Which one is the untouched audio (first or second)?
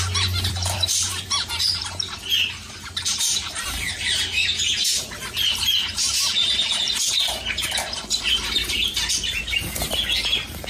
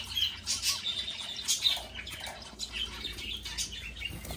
second